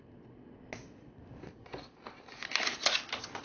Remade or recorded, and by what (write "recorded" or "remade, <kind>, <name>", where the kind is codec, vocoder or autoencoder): recorded